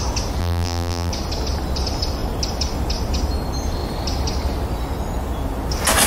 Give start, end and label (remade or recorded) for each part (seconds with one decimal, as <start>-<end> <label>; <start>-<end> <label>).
0.0-0.4 recorded; 0.4-1.1 remade; 1.1-6.1 recorded